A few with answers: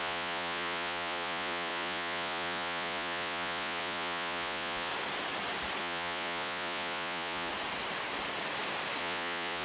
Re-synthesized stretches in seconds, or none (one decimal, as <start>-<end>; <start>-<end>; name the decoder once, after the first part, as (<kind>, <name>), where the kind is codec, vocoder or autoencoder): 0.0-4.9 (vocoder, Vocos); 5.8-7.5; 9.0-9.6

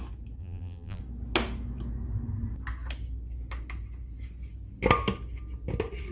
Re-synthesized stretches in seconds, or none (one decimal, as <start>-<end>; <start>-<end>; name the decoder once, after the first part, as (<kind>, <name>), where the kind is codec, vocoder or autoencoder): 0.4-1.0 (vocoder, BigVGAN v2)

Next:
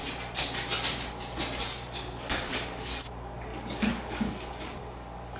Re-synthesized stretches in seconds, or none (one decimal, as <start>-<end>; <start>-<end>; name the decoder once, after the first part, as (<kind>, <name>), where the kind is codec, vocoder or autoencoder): 1.6-5.4 (codec, DAC)